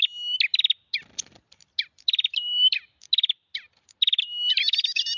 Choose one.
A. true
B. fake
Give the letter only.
A